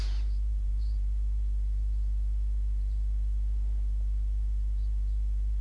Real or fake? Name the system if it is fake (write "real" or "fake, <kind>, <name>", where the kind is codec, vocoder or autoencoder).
fake, vocoder, BigVGAN v2